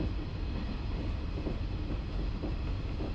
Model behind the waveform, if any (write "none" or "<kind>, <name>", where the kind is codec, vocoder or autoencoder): none